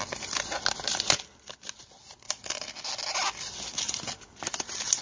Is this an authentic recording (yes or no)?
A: yes